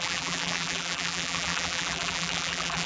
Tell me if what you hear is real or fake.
fake